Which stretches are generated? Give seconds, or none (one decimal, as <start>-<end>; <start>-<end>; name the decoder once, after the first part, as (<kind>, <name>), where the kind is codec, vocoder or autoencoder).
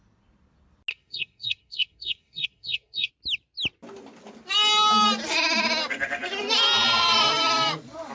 0.9-3.1 (codec, SNAC)